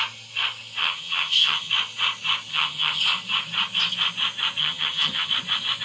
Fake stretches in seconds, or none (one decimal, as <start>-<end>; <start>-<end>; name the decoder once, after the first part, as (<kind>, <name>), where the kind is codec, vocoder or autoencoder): 0.8-1.7 (vocoder, HiFi-GAN); 2.5-3.0; 4.6-5.3

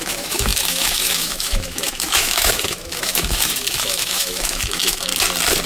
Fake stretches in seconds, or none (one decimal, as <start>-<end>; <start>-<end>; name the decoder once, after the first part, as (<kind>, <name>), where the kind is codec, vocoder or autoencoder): 0.0-5.1 (autoencoder, DAC-VAE)

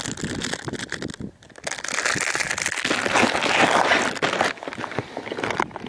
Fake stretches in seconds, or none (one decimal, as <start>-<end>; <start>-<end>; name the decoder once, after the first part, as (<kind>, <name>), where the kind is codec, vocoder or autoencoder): none

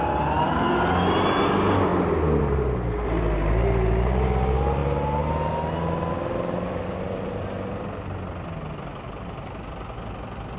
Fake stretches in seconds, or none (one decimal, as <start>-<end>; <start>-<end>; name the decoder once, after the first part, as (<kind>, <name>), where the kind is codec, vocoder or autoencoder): none